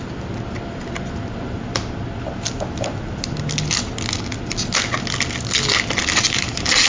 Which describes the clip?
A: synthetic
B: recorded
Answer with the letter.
B